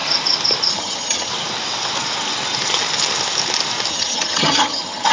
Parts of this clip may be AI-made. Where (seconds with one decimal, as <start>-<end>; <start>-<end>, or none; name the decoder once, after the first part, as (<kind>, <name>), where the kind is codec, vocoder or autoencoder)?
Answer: 0.7-1.3 (vocoder, HiFi-GAN); 3.9-5.1